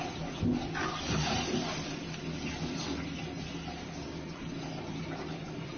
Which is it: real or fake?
real